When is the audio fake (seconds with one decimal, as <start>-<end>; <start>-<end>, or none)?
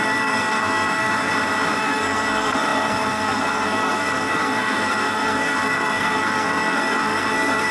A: 0.0-1.3; 1.8-7.7